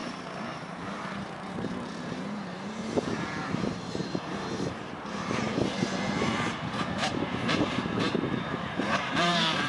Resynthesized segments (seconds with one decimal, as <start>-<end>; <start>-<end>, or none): 0.0-9.7